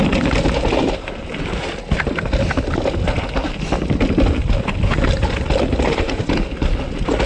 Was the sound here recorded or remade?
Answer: recorded